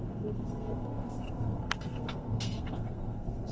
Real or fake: fake